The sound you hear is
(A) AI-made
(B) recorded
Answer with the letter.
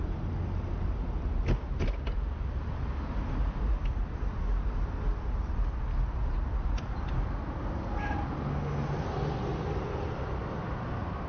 B